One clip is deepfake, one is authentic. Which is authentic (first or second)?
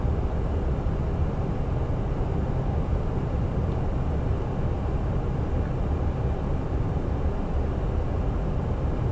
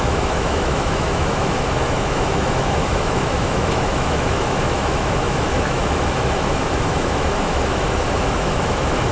first